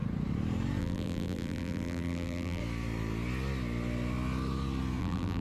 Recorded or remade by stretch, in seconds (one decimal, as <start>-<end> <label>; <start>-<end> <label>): 0.0-0.8 recorded; 0.8-2.6 remade; 2.6-5.0 recorded; 5.0-5.4 remade